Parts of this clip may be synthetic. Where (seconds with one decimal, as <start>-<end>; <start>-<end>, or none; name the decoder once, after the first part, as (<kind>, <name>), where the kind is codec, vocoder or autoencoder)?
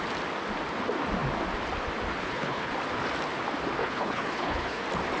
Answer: 2.2-2.7 (codec, HILCodec); 3.8-4.8